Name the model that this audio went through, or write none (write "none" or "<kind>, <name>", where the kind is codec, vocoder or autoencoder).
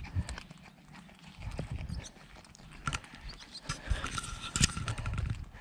none